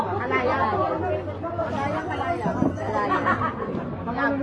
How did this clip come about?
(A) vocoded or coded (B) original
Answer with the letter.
B